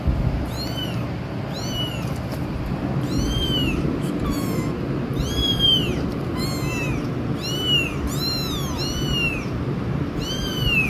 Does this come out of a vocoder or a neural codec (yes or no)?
no